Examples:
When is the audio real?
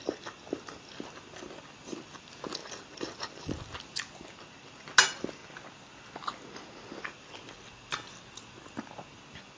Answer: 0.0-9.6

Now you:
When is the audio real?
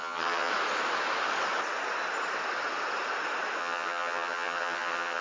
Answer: 0.5-3.6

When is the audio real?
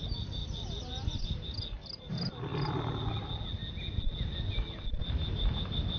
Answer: 0.0-6.0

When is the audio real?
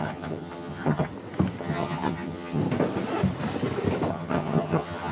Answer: 1.1-1.6; 2.6-4.1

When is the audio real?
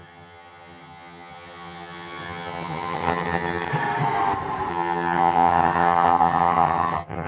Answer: 3.7-4.7